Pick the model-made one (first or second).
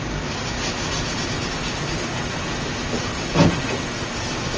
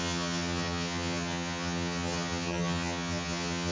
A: second